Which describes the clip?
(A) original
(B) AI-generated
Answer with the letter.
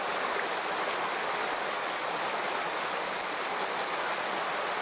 A